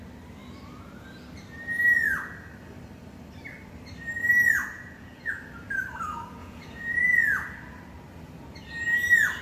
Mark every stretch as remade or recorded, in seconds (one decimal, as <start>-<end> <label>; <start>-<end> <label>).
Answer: 0.0-4.6 recorded; 4.6-5.4 remade; 5.4-6.4 recorded; 6.4-7.0 remade; 7.0-9.4 recorded